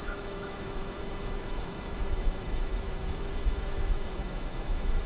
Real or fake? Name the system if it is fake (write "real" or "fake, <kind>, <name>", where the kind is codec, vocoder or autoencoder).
fake, autoencoder, DAC-VAE